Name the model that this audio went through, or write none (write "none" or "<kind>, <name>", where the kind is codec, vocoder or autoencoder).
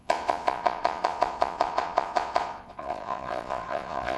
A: vocoder, Vocos